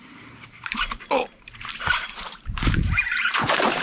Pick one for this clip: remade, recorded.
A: remade